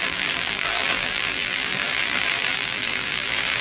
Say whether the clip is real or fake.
fake